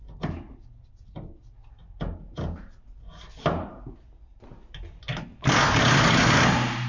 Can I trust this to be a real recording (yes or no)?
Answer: yes